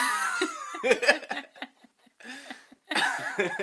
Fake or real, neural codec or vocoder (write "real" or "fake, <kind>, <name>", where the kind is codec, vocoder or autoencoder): real